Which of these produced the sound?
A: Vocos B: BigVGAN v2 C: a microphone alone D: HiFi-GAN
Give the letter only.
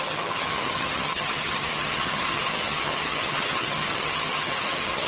D